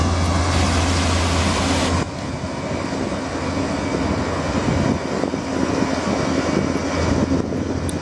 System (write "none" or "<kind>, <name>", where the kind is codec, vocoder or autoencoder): none